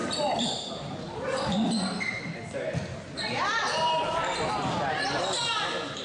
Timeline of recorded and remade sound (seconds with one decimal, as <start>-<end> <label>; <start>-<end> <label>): 0.0-6.0 recorded